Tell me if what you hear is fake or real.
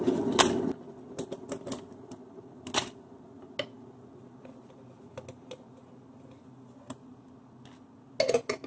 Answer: real